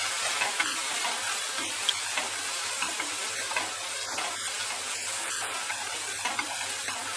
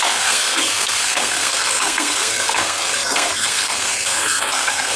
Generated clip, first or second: second